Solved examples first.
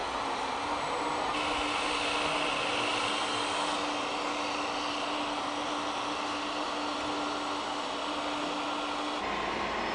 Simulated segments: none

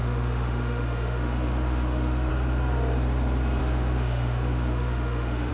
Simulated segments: 0.0-2.3 (autoencoder, DAC-VAE); 3.6-5.5